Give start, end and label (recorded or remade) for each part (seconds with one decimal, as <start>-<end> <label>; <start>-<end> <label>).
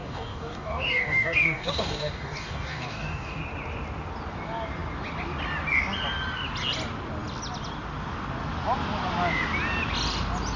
0.0-3.4 remade; 3.4-10.6 recorded